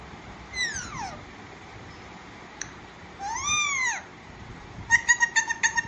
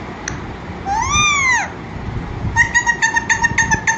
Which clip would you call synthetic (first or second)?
first